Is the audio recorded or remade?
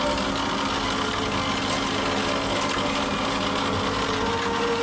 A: recorded